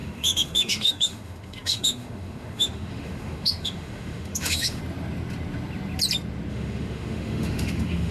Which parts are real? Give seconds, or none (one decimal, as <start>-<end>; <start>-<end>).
4.8-6.5